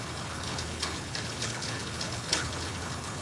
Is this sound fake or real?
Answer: fake